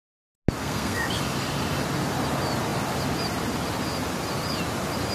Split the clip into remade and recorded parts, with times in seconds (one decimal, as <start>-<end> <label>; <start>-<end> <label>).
0.0-0.6 recorded; 0.6-1.1 remade; 1.1-5.1 recorded